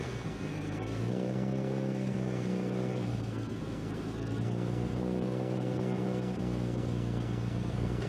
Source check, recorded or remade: remade